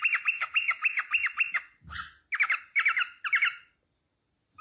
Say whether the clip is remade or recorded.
recorded